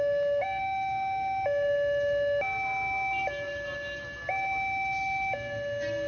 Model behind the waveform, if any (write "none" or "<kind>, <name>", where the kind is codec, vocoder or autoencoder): none